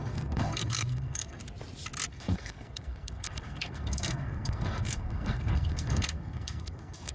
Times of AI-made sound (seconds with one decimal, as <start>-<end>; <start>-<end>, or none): 0.0-1.4; 2.1-7.1